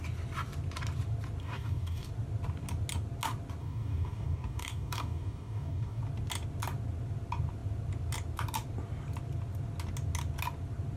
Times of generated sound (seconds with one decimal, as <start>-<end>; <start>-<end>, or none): 1.4-2.1; 3.6-6.0